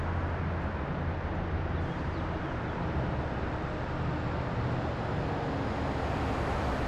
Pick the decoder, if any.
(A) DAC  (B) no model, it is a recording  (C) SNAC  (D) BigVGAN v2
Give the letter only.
B